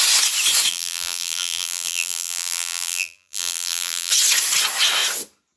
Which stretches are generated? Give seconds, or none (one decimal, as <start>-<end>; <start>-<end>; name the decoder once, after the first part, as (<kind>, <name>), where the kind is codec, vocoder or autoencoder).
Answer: 0.7-4.1 (vocoder, BigVGAN v2)